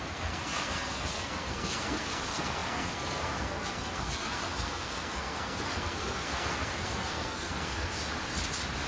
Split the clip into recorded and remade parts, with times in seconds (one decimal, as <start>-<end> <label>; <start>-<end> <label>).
0.0-8.0 remade; 8.0-8.9 recorded